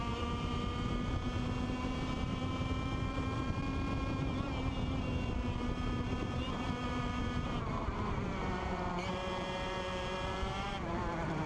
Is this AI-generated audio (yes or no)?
yes